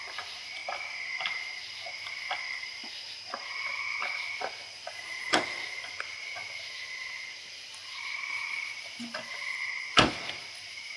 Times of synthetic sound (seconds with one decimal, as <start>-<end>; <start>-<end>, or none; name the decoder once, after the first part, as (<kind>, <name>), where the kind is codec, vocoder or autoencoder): 7.8-10.4 (vocoder, BigVGAN v2)